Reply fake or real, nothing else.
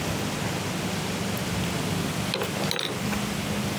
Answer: real